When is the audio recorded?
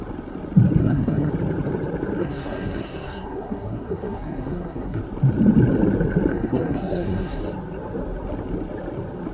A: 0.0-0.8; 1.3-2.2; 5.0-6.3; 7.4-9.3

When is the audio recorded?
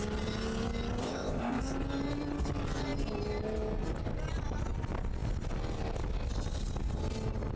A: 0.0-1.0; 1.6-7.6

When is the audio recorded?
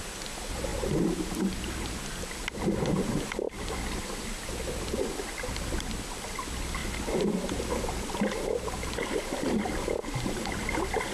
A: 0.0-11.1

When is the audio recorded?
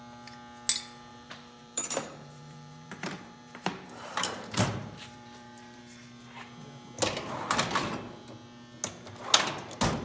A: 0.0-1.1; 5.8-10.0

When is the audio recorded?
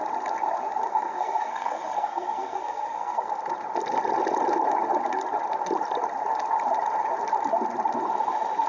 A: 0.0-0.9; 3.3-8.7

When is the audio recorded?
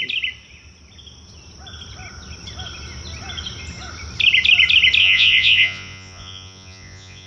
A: 0.0-5.0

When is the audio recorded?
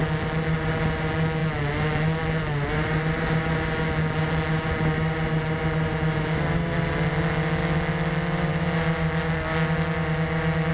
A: 0.0-10.7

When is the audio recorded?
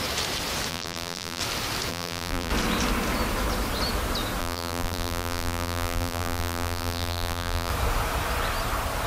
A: 0.0-0.7; 1.4-1.9; 2.5-4.4; 7.7-9.1